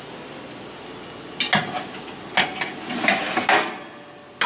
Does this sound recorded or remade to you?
recorded